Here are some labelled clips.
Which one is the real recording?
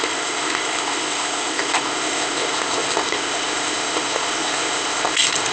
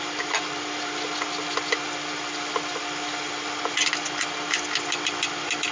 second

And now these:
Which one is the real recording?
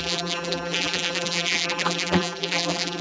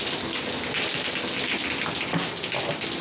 second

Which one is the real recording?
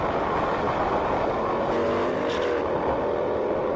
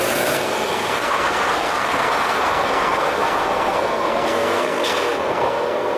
first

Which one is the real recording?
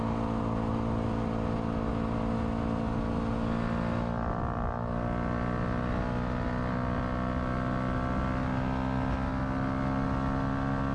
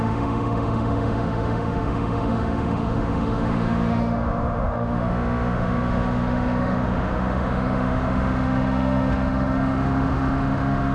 first